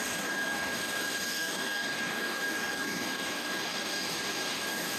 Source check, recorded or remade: remade